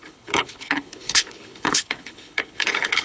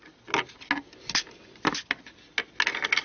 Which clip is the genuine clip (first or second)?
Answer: second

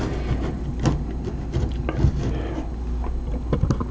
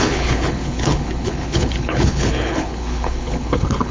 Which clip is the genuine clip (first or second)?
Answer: first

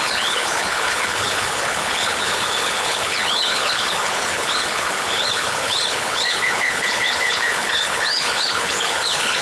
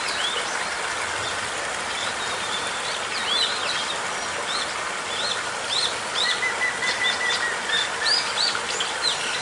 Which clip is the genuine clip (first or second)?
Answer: second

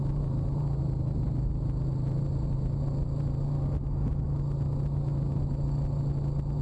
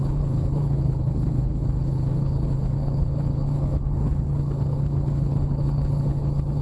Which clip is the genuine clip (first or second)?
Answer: first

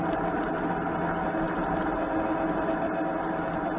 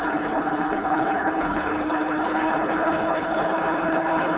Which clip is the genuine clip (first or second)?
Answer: first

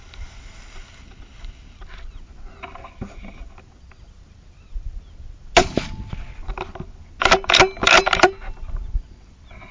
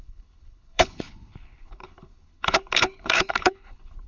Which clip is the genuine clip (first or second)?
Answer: first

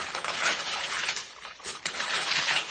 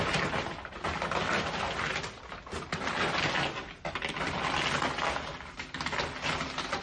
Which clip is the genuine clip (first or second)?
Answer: second